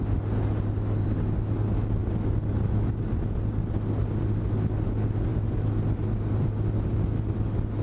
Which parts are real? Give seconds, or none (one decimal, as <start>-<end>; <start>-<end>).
0.0-7.8

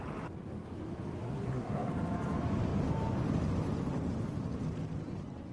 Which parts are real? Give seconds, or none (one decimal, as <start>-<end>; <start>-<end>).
0.0-1.2; 1.9-5.5

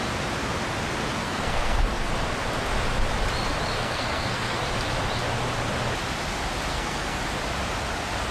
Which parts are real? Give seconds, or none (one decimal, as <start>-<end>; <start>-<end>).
0.0-1.2; 2.1-3.8; 4.6-6.7; 7.2-8.3

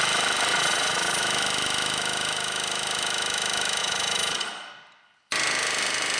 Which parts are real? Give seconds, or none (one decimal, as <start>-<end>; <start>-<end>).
0.0-0.5; 1.2-3.8; 4.7-6.2

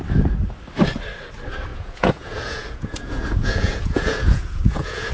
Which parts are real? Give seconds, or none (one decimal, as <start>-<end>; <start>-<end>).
0.0-1.7

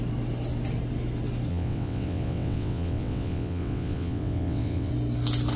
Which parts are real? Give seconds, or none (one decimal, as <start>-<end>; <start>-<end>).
0.0-1.5; 4.9-5.6

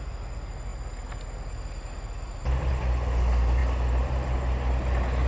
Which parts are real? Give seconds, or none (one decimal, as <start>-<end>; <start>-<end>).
0.0-5.3

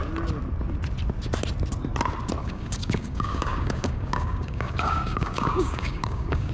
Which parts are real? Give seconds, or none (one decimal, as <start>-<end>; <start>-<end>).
0.0-2.4